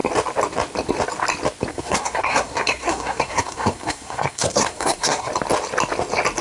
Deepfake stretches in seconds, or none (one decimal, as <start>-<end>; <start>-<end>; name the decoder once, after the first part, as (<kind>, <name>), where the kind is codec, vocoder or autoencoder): 1.7-5.3 (codec, SNAC)